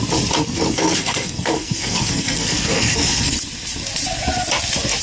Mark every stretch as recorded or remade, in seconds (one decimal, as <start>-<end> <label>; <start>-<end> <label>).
0.0-0.4 recorded; 0.4-3.3 remade; 3.3-5.0 recorded